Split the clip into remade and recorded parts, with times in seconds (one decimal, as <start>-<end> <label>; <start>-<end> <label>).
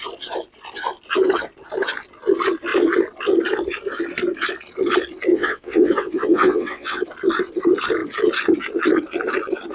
0.0-5.3 recorded; 5.3-7.0 remade; 7.0-9.7 recorded